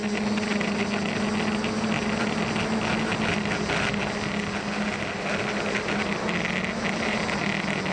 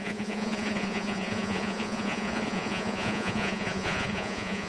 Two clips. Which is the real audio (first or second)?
first